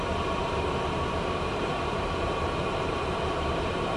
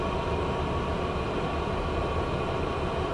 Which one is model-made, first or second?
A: first